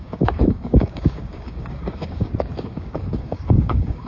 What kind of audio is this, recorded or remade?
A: remade